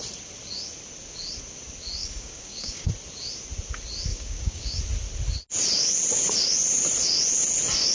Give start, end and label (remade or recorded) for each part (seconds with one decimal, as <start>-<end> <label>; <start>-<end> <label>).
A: 0.0-2.0 recorded; 2.0-2.9 remade; 2.9-4.1 recorded; 4.1-4.8 remade; 4.8-7.9 recorded

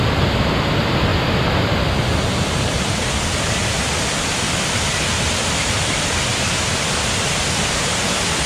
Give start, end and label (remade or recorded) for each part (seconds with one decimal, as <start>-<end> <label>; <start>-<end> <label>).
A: 0.0-8.5 recorded

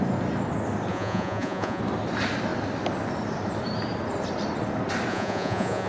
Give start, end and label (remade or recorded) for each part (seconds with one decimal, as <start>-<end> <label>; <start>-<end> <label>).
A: 0.0-0.9 recorded; 0.9-1.8 remade; 1.8-5.1 recorded; 5.1-5.9 remade

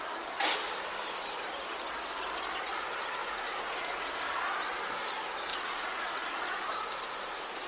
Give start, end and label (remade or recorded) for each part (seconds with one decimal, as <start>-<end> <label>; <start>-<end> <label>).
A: 0.0-3.2 recorded; 3.2-4.1 remade; 4.1-5.5 recorded; 5.5-7.7 remade

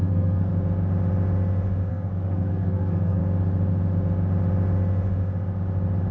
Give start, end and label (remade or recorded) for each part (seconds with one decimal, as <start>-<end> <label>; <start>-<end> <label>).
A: 0.0-0.5 remade; 0.5-1.9 recorded; 1.9-3.2 remade; 3.2-6.1 recorded

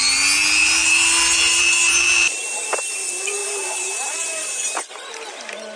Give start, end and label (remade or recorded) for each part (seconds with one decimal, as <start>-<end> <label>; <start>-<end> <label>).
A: 0.0-0.6 recorded; 0.6-2.3 remade; 2.3-3.4 recorded; 3.4-4.9 remade; 4.9-5.8 recorded

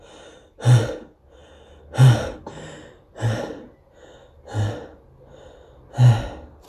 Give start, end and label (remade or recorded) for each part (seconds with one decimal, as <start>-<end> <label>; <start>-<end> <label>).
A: 0.0-6.7 recorded

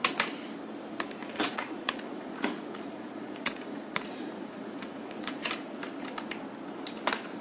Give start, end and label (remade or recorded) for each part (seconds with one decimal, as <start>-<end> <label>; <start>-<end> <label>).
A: 0.0-1.2 recorded; 1.2-5.5 remade; 5.5-7.4 recorded